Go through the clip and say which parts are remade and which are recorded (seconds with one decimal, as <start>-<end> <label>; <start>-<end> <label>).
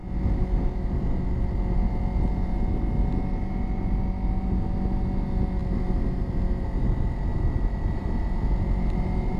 0.0-7.3 recorded; 7.3-8.2 remade; 8.2-9.4 recorded